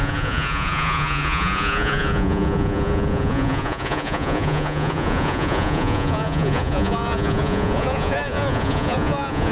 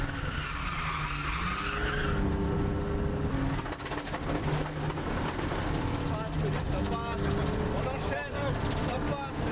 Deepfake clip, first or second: first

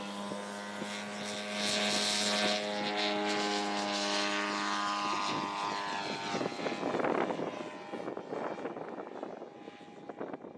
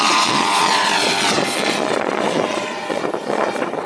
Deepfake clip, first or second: second